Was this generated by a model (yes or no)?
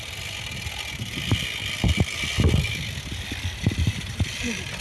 no